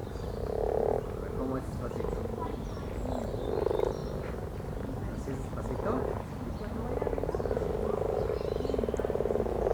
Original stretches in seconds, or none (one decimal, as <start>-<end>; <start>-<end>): 0.0-9.7